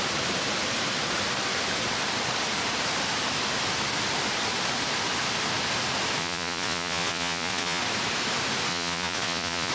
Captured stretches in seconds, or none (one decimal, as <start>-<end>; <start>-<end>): 0.0-6.2; 7.8-8.7